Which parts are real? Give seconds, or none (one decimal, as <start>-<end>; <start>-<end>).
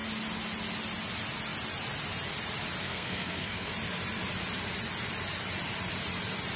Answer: 0.0-2.8; 3.7-6.6